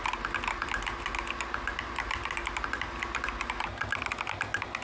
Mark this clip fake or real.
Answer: real